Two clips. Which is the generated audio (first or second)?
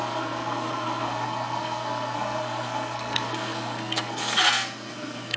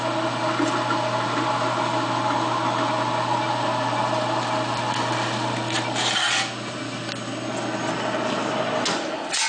first